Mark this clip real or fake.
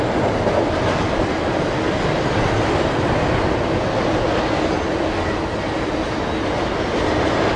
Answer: real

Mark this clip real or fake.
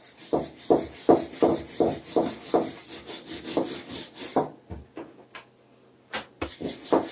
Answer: real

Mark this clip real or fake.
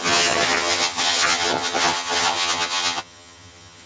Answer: fake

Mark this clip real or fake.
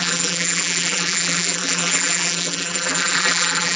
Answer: fake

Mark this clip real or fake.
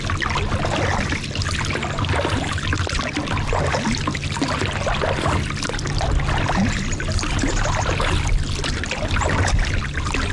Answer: real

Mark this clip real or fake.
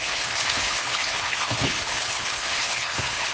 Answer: fake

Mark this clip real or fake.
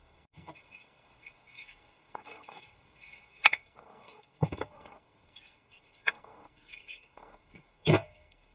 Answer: fake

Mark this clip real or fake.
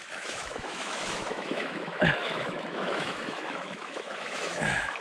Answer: fake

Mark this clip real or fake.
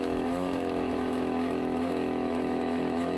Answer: fake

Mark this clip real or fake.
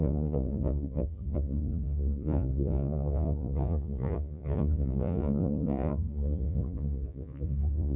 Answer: fake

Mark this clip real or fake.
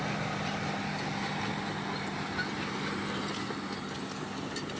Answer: real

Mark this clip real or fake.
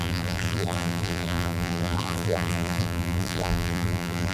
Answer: fake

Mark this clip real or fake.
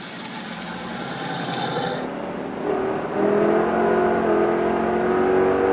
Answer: real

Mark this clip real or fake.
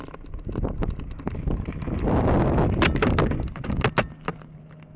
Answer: real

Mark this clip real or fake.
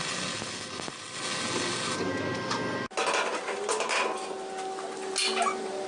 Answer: real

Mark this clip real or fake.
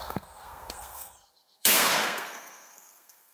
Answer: fake